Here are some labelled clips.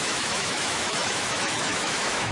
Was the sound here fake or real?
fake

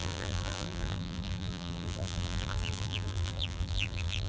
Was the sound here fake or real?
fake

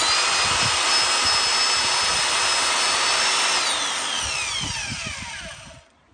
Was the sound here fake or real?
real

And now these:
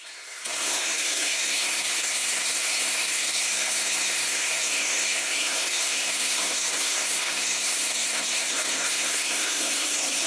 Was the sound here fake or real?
fake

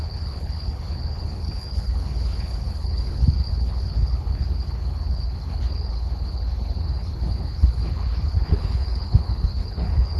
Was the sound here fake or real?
fake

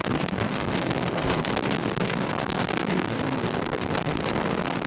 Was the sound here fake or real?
fake